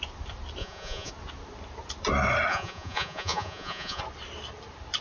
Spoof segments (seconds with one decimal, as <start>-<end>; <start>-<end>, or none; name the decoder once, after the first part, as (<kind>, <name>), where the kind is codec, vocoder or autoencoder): 0.6-1.1 (vocoder, Vocos); 2.5-4.0